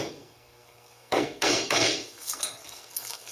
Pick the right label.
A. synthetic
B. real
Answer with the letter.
A